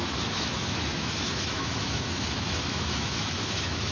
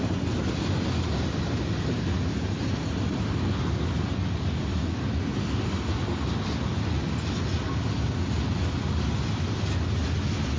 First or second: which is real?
second